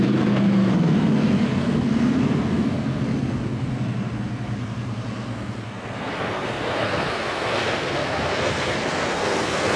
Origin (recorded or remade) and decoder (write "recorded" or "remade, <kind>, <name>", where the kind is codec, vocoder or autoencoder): remade, codec, SNAC